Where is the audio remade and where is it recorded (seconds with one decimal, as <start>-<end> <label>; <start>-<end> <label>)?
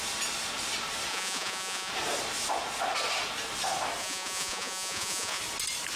0.0-1.1 recorded; 1.1-1.9 remade; 1.9-4.0 recorded; 4.0-5.4 remade; 5.4-6.0 recorded